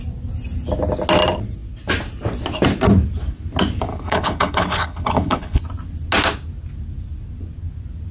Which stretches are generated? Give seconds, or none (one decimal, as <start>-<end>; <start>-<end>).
3.9-5.6